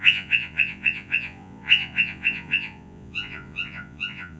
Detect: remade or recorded remade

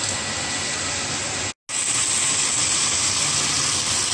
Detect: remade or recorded recorded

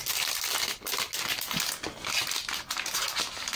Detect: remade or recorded recorded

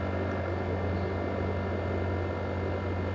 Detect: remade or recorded recorded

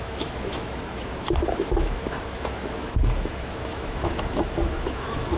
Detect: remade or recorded remade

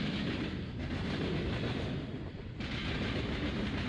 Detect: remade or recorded recorded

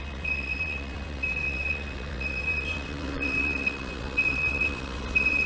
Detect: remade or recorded remade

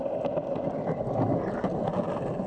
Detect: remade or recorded recorded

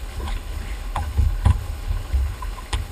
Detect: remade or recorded remade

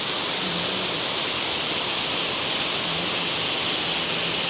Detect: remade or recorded recorded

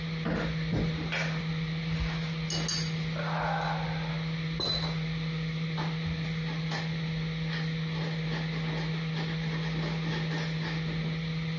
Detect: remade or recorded recorded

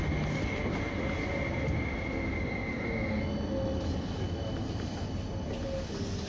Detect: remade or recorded recorded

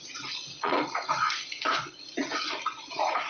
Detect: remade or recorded remade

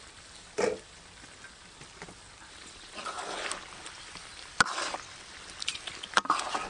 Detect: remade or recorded recorded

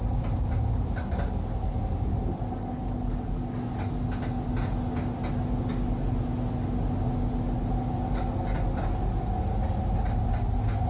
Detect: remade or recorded recorded